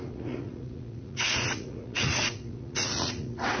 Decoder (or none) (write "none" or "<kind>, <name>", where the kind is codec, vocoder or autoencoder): vocoder, Vocos